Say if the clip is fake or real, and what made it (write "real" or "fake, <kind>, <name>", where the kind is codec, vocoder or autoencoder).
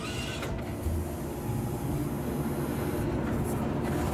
real